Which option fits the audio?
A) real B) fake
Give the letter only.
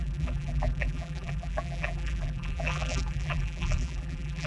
B